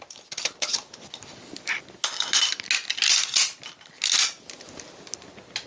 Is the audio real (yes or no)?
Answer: yes